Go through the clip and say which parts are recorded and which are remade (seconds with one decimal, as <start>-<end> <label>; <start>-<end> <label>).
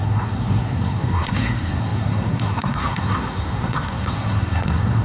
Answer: 0.0-5.0 remade